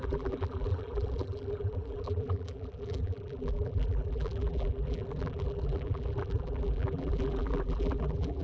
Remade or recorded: remade